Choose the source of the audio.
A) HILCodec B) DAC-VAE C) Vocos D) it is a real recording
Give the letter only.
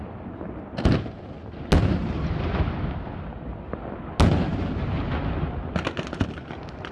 D